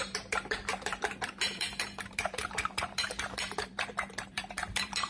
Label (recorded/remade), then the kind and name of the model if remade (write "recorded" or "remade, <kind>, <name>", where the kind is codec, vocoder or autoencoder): remade, vocoder, BigVGAN v2